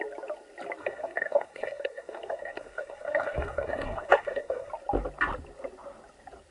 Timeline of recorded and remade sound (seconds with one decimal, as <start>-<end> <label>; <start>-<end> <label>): 0.0-0.8 recorded; 0.8-4.7 remade; 4.7-6.5 recorded